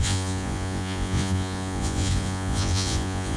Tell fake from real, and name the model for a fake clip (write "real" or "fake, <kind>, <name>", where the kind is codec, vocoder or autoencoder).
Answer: fake, vocoder, Vocos